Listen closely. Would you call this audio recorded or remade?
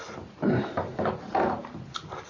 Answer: recorded